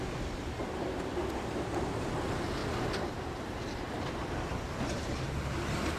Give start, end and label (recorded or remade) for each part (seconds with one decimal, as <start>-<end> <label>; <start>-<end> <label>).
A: 0.0-6.0 recorded